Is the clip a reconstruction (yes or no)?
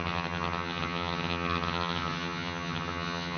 yes